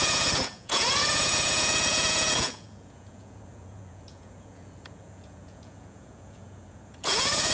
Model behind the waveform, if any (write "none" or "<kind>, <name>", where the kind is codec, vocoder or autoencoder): vocoder, Vocos